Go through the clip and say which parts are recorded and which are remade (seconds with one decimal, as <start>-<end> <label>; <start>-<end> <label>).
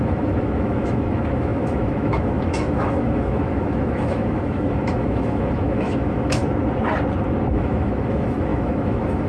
0.0-6.4 remade; 6.4-7.5 recorded; 7.5-9.3 remade